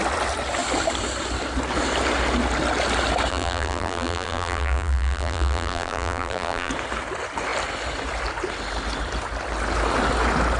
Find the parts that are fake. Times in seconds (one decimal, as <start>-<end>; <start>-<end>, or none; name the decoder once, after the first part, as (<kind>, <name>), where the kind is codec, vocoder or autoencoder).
3.3-6.7 (vocoder, BigVGAN v2)